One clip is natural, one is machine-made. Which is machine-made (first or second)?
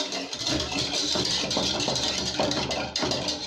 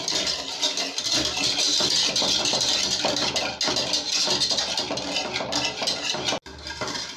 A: first